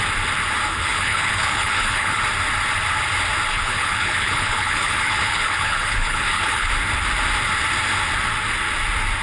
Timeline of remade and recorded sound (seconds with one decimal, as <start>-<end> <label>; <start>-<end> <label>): 0.0-0.7 recorded; 0.7-2.2 remade; 2.2-3.5 recorded; 3.5-6.7 remade; 6.7-9.2 recorded